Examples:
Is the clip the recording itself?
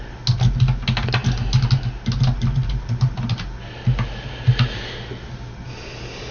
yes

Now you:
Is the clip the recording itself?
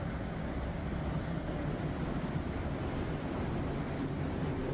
yes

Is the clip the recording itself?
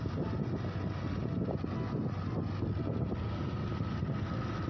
yes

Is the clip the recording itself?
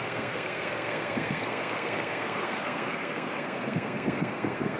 no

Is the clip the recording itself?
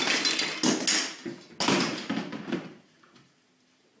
yes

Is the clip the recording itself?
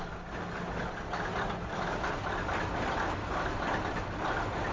yes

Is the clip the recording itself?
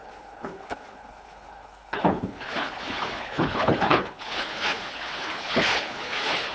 no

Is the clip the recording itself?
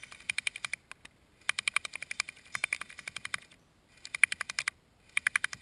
yes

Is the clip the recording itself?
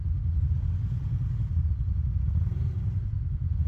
yes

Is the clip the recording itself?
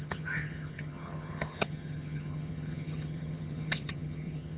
no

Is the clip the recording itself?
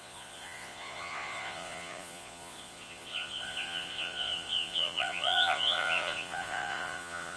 no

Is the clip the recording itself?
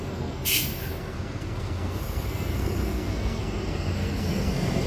no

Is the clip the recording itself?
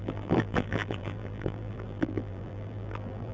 no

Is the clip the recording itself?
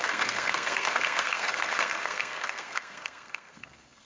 no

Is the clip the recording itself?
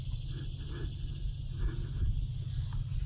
yes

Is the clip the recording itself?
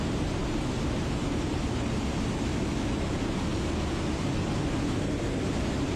yes